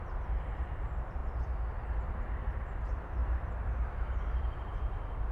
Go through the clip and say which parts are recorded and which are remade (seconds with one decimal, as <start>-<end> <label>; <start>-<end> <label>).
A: 0.0-1.2 remade; 1.2-2.1 recorded; 2.1-3.2 remade; 3.2-4.1 recorded; 4.1-5.3 remade